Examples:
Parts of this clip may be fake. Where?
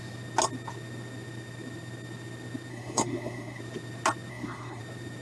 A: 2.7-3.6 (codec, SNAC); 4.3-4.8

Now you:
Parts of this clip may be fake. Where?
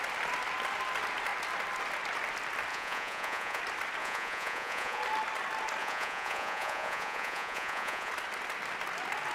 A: 2.7-3.6 (vocoder, Vocos); 4.0-5.0; 5.8-8.1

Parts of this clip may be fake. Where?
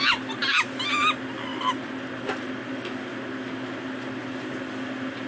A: none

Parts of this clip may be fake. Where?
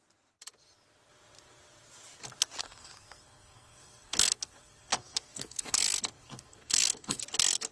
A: 2.6-7.2 (codec, SNAC)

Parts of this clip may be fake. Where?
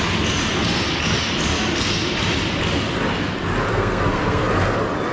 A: 3.7-4.5 (codec, SNAC)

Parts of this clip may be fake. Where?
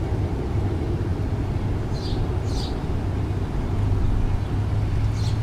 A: none